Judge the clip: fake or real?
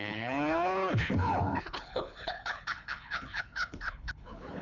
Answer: fake